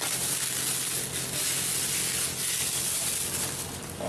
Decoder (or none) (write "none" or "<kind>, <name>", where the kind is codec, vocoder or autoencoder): none